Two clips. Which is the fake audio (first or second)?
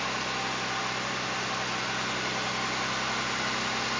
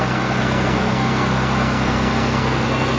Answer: second